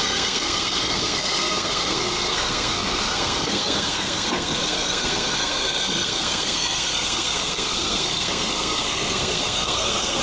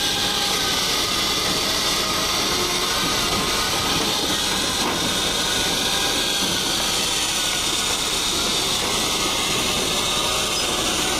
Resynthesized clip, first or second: first